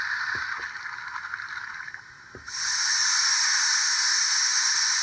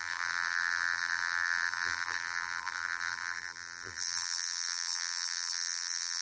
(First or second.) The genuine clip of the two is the first